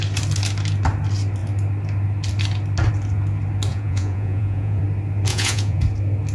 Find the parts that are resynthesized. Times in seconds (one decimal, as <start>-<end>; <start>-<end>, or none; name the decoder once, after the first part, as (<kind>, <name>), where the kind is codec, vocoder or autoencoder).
3.7-4.8 (vocoder, Vocos); 5.3-5.8

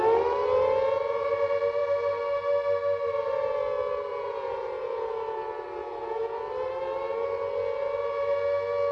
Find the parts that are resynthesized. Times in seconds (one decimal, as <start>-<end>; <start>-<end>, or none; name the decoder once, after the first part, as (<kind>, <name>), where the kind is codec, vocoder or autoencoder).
4.1-5.2 (vocoder, Vocos); 5.8-6.4